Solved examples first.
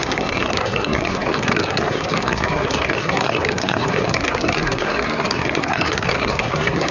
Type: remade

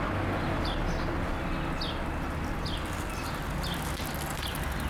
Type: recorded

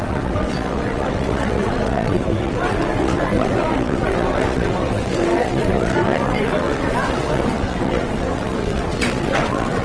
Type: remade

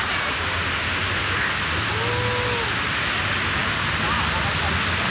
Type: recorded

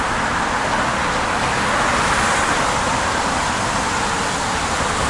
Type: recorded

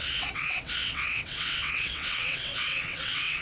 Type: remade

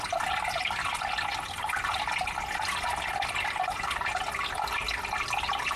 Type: recorded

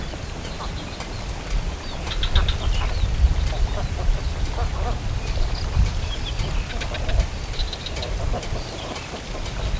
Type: recorded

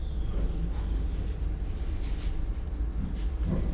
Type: recorded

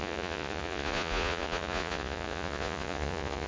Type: remade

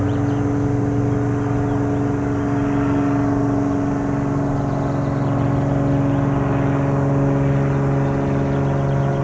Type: recorded